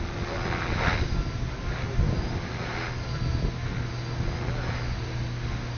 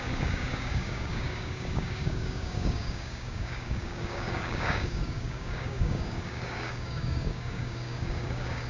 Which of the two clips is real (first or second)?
first